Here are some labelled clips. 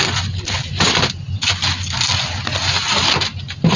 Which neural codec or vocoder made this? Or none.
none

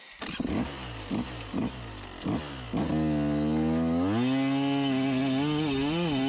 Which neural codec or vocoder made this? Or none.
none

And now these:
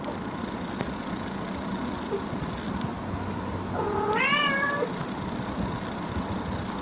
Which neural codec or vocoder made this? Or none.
none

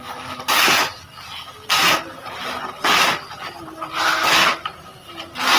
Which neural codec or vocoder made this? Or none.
none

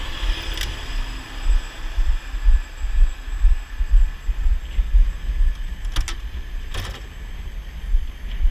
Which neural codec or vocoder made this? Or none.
none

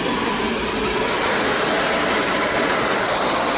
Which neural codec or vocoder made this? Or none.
none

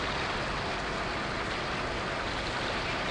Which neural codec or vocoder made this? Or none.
none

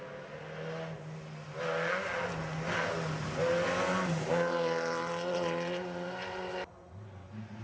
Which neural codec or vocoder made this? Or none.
none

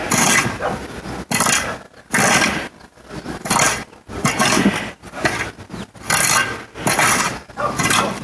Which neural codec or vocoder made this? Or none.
none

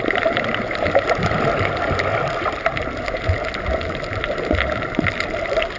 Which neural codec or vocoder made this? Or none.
none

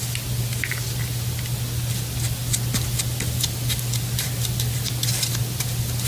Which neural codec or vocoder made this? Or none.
none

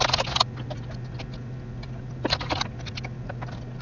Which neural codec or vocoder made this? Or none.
none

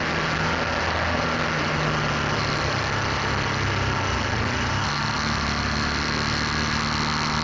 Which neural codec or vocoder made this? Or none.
none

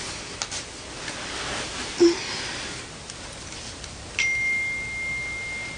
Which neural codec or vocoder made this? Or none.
none